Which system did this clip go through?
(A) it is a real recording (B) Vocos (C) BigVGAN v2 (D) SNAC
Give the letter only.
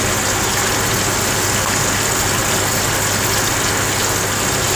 A